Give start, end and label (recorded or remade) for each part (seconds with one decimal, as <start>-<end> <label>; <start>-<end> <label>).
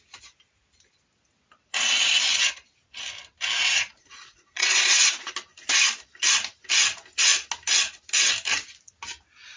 0.0-3.6 recorded; 3.6-5.3 remade; 5.3-9.6 recorded